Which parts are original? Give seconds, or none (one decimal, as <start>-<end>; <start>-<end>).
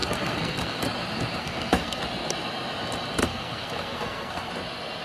0.8-1.4; 2.0-3.2; 4.5-5.0